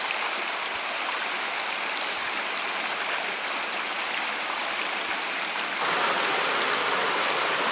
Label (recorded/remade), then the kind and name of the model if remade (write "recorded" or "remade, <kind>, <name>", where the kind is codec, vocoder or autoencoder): recorded